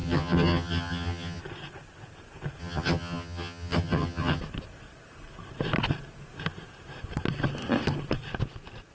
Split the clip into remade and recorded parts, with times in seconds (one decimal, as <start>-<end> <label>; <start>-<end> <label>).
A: 0.0-1.4 remade; 1.4-2.6 recorded; 2.6-4.4 remade; 4.4-8.9 recorded